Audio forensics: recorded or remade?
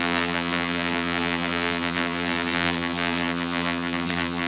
remade